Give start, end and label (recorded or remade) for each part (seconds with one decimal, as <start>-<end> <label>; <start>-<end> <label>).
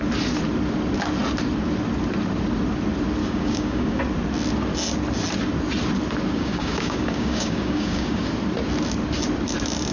0.0-3.2 recorded; 3.2-4.0 remade; 4.0-6.3 recorded; 6.3-8.3 remade; 8.3-9.9 recorded